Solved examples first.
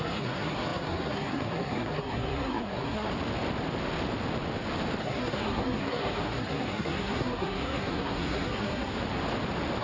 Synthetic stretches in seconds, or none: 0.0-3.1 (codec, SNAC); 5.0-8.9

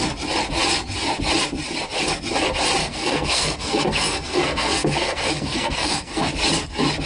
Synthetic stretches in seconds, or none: 2.8-6.3 (codec, SNAC)